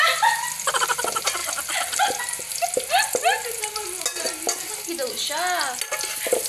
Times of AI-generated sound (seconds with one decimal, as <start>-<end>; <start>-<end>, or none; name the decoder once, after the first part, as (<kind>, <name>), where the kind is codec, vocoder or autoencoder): none